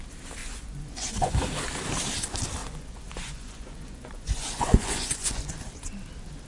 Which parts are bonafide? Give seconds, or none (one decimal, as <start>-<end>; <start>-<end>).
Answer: 0.0-0.4; 1.4-2.6; 5.5-6.5